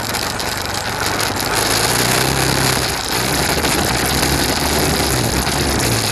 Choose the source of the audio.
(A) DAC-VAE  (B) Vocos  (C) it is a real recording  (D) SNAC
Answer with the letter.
C